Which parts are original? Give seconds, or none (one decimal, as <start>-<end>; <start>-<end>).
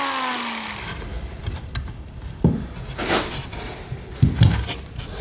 0.0-1.1; 3.1-5.2